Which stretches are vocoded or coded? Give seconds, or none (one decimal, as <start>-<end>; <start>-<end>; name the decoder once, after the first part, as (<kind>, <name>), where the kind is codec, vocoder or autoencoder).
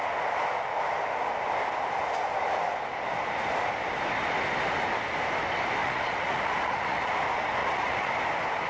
5.8-7.1 (vocoder, Vocos); 7.6-8.1